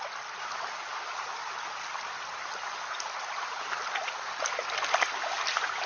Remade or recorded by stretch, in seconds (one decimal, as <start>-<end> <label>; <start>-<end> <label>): 0.0-5.9 recorded